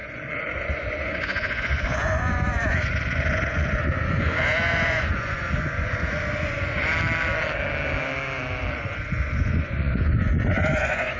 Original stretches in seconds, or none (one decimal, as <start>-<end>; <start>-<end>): 6.9-8.7